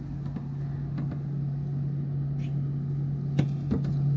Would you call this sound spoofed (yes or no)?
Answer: no